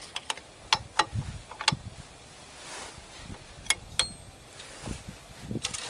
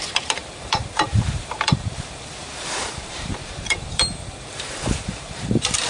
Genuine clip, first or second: first